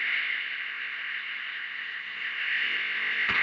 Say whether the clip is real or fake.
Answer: fake